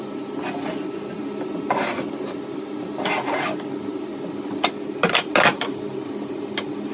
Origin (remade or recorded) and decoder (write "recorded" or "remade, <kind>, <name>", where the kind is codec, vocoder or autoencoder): recorded